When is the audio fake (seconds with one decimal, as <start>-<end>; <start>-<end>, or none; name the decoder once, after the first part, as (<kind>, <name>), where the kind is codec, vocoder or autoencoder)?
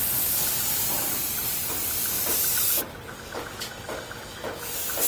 2.0-3.1 (vocoder, BigVGAN v2)